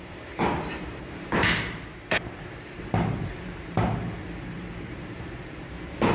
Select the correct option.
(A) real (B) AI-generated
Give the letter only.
B